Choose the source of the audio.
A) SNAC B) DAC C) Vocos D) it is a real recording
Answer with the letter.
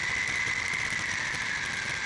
D